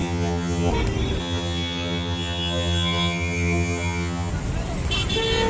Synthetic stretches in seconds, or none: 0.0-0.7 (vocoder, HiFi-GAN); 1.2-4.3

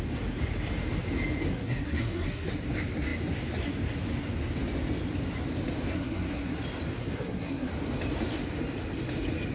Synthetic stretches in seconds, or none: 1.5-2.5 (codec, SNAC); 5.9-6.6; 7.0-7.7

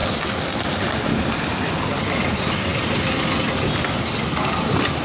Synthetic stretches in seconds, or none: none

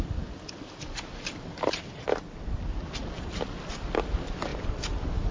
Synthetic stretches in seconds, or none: none

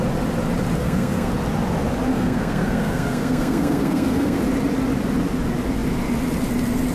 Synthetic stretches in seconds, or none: 0.8-1.3 (codec, SNAC); 2.1-4.4